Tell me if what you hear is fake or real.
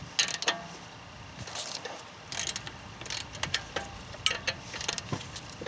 real